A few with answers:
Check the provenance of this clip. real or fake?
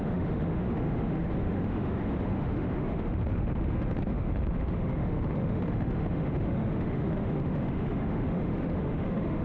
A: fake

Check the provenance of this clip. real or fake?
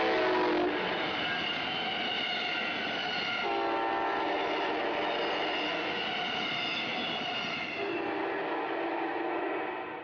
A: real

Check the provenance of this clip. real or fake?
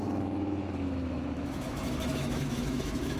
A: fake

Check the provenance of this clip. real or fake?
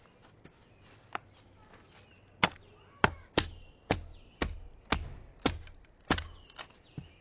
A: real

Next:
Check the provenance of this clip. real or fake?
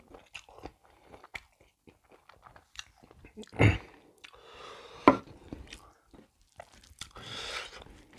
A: real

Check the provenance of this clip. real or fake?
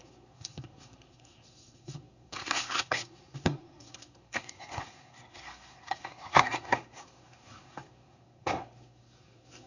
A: fake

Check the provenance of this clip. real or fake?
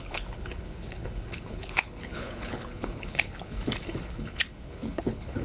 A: fake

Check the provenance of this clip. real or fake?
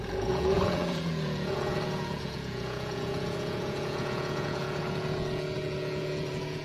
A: fake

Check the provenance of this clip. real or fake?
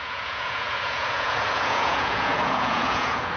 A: fake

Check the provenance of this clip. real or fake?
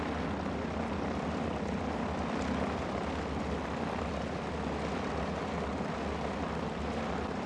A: real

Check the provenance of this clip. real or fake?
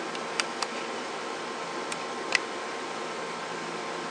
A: real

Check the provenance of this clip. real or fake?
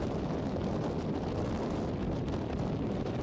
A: real